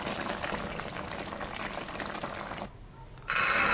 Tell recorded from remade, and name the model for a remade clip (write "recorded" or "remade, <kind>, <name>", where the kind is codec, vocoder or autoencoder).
recorded